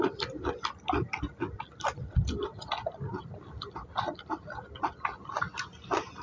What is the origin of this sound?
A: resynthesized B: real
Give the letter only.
B